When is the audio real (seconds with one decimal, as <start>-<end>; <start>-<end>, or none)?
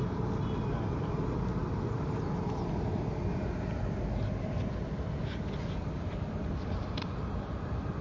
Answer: 0.0-8.0